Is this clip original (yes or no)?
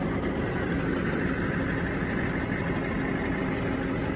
yes